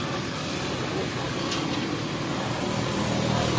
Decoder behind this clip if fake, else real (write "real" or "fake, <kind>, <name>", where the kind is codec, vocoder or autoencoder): real